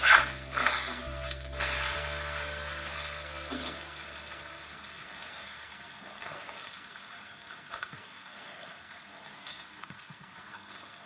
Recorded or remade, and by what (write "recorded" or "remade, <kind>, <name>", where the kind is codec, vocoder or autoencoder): remade, codec, SNAC